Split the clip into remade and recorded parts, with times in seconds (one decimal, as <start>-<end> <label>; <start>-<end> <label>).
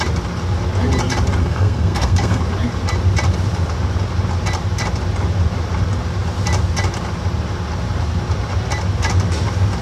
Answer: 0.0-1.4 recorded; 1.4-2.4 remade; 2.4-9.8 recorded